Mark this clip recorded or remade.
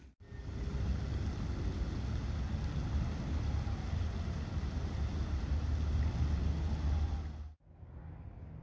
recorded